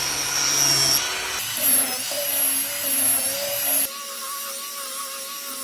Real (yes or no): yes